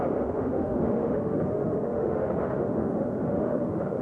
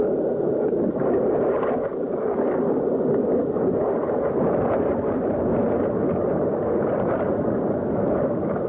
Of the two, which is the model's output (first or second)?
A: first